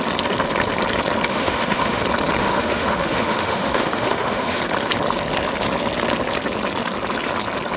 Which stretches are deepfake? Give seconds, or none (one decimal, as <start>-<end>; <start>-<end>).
1.3-2.0; 2.4-4.6